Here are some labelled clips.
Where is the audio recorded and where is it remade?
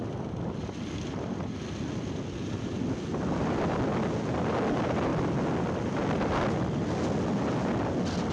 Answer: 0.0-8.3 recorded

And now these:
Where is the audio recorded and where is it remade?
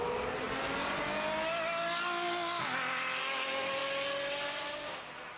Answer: 0.0-3.2 recorded; 3.2-3.8 remade; 3.8-5.4 recorded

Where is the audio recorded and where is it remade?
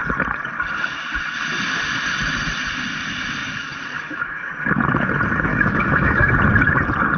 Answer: 0.0-3.4 recorded; 3.4-4.5 remade; 4.5-5.5 recorded; 5.5-6.3 remade; 6.3-7.2 recorded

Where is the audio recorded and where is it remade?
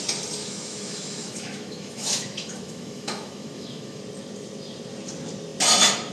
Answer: 0.0-0.4 recorded; 0.4-4.0 remade; 4.0-6.1 recorded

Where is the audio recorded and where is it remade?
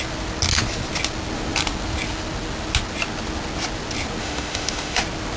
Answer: 0.0-4.2 recorded; 4.2-5.0 remade; 5.0-5.4 recorded